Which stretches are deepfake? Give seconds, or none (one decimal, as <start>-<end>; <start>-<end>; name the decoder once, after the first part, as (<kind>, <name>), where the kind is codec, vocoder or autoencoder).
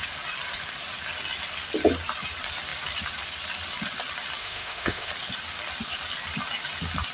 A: 4.4-5.1 (autoencoder, DAC-VAE)